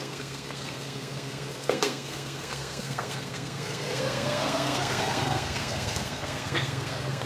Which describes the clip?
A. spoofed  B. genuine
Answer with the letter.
A